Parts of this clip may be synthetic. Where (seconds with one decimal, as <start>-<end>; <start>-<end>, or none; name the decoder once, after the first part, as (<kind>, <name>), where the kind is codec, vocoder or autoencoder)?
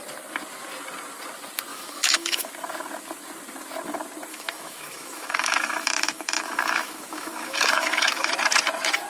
1.7-2.5 (autoencoder, DAC-VAE); 4.3-8.3